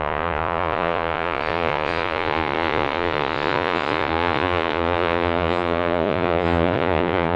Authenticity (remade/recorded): remade